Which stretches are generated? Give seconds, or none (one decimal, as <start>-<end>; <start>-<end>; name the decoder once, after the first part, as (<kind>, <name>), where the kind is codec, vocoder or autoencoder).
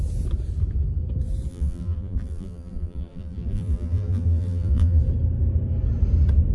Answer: 1.5-5.0 (vocoder, BigVGAN v2)